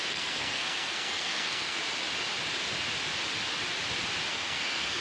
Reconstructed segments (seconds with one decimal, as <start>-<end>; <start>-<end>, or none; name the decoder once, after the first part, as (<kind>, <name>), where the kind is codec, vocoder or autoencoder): 0.0-1.8 (codec, SNAC); 4.3-5.0